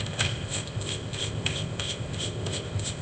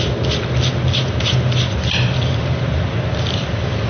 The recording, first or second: second